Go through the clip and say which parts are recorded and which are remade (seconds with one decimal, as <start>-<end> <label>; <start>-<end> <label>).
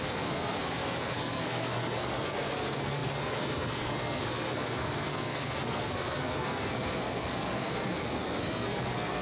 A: 0.0-9.2 remade